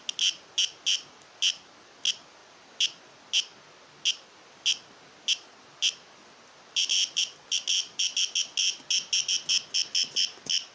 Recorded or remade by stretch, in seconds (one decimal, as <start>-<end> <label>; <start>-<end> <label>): 0.0-10.7 recorded